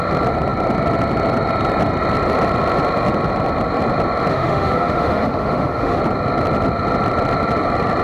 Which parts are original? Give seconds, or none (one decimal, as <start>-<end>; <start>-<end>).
0.0-4.3; 6.0-8.0